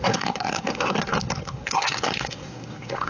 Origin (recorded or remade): remade